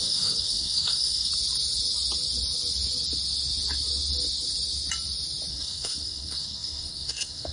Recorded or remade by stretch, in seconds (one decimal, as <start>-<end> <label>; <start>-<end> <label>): 0.0-1.3 remade; 1.3-5.5 recorded; 5.5-7.5 remade